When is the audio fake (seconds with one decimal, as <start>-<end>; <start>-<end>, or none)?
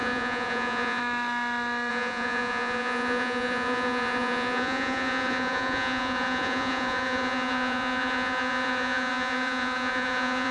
0.0-1.0; 1.9-10.5